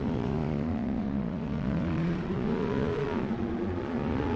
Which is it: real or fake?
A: fake